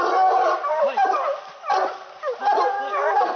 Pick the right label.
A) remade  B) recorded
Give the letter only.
B